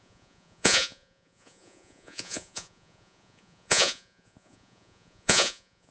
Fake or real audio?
fake